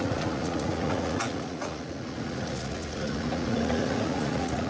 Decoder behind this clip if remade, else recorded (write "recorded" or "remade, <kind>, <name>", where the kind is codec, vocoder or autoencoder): remade, vocoder, Vocos